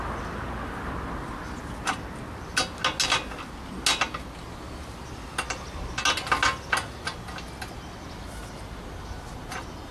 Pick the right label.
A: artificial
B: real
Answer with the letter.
B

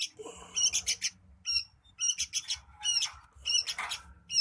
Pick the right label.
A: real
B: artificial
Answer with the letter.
A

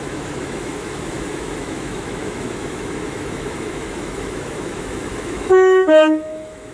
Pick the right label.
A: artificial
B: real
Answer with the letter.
A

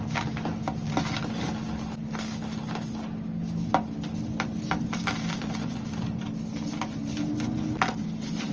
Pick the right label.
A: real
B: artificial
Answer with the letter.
A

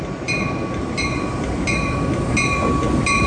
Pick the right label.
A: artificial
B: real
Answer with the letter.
B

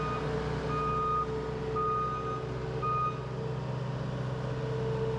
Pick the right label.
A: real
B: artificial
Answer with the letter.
A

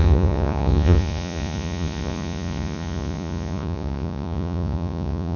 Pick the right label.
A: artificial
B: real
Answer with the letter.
A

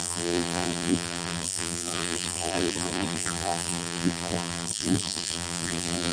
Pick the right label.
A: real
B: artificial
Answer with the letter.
B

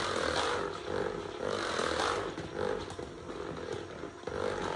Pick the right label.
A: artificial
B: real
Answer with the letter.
B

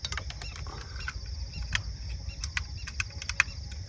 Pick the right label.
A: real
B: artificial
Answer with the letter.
A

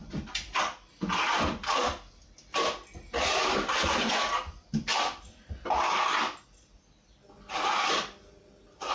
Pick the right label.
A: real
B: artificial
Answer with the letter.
A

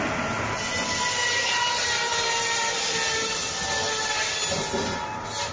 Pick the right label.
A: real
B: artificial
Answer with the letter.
A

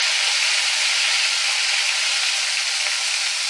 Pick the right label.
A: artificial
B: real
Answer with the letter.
B